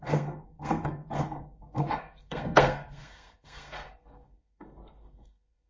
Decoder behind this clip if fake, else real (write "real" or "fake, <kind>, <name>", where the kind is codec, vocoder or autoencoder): fake, codec, SNAC